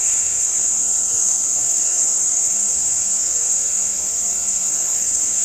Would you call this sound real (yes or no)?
no